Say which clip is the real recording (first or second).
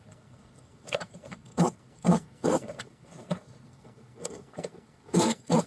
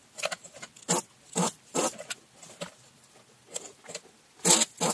second